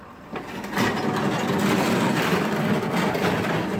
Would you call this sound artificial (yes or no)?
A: no